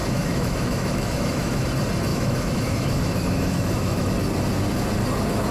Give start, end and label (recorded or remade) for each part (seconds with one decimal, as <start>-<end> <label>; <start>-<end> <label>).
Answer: 0.0-1.7 remade; 1.7-2.1 recorded; 2.1-4.1 remade; 4.1-5.5 recorded